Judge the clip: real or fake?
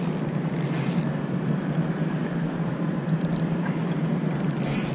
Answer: fake